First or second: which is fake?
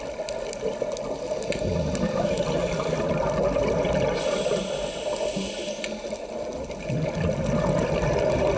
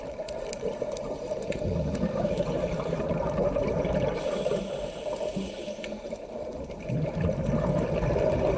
second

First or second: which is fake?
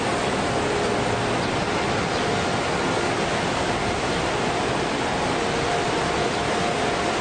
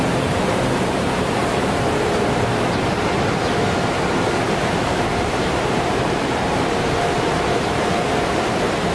second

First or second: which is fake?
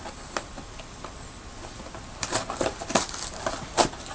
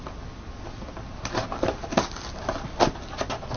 first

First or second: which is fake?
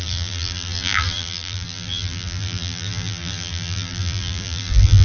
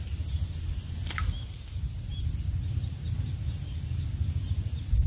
first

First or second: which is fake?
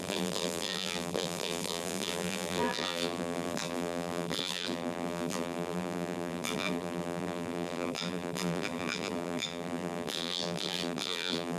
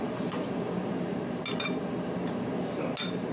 first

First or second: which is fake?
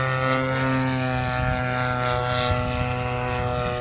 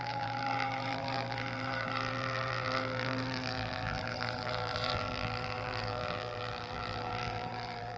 second